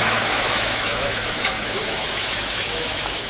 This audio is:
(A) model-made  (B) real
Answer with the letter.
A